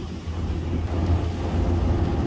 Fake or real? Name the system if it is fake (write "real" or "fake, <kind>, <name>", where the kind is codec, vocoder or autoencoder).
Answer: real